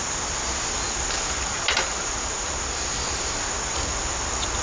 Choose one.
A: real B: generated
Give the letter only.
A